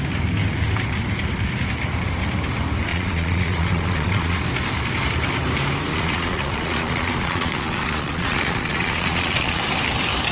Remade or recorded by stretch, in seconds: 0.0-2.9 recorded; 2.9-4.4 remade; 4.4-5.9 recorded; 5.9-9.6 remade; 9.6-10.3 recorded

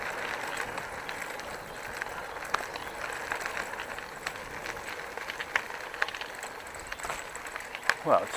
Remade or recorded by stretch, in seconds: 0.0-8.4 recorded

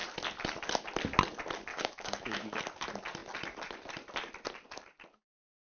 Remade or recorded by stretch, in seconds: 0.0-1.7 recorded; 1.7-2.6 remade; 2.6-5.7 recorded

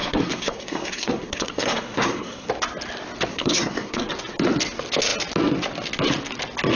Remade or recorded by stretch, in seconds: 0.0-2.5 remade; 2.5-3.3 recorded; 3.3-4.1 remade; 4.1-6.7 recorded

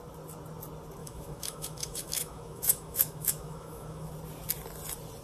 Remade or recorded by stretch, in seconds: 0.0-1.0 recorded; 1.0-4.1 remade; 4.1-5.2 recorded

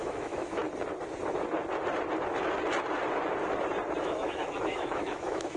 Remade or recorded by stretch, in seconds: 0.0-0.6 remade; 0.6-4.0 recorded; 4.0-5.6 remade